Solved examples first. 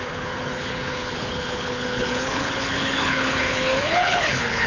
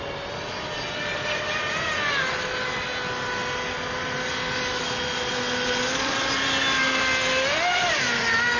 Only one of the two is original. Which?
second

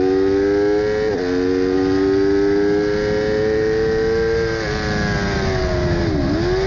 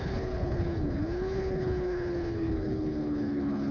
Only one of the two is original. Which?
first